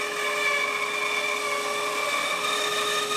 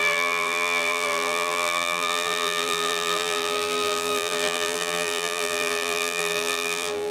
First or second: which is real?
first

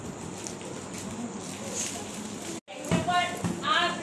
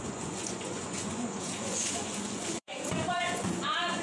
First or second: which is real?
first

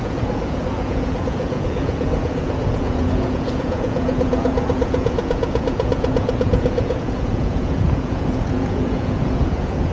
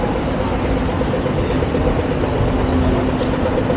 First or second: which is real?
second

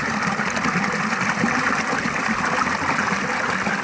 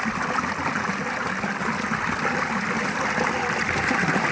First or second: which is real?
first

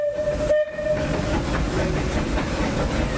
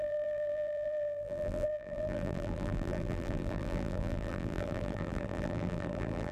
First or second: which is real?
first